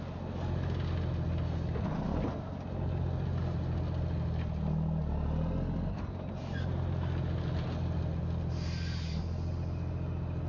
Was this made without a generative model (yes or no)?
yes